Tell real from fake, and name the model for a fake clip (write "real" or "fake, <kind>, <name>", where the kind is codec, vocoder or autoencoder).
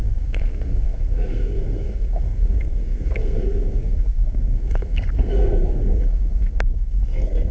fake, codec, SNAC